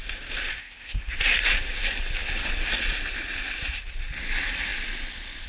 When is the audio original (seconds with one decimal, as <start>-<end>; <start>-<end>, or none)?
0.0-0.6; 1.1-5.5